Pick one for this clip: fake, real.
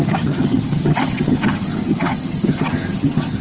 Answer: fake